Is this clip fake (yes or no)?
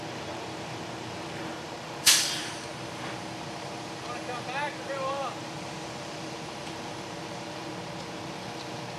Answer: yes